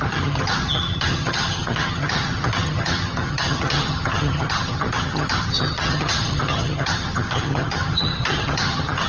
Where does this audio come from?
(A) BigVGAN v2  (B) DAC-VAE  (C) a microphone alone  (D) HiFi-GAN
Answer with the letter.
D